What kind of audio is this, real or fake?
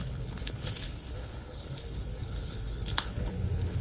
fake